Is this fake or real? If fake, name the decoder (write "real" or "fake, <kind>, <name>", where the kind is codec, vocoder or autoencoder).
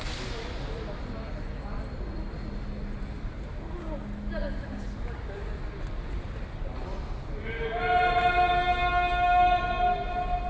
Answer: real